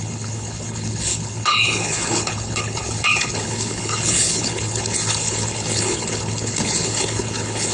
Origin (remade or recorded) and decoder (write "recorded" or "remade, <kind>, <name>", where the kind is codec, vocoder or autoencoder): remade, codec, HILCodec